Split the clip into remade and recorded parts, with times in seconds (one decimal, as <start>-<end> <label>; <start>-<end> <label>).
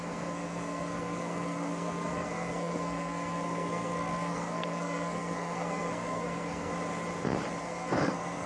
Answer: 0.0-6.7 remade; 6.7-7.6 recorded; 7.6-8.5 remade